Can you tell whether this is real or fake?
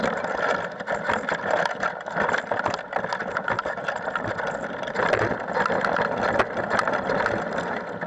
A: real